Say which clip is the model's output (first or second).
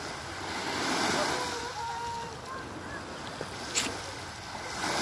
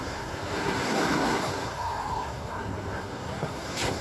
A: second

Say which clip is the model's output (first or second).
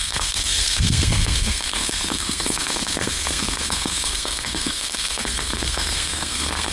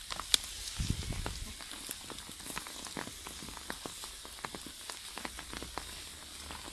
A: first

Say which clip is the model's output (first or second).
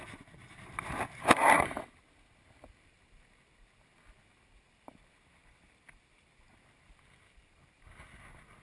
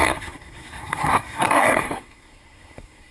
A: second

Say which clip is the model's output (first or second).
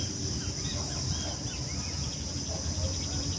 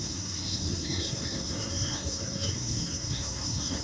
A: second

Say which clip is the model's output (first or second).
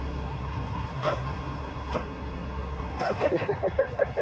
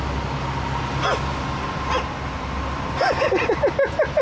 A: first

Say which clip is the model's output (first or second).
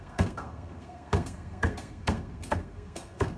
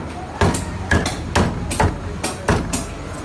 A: first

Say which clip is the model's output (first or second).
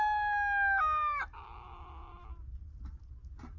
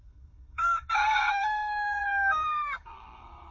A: second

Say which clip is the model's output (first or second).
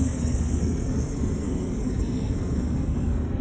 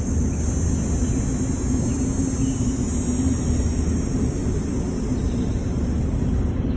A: first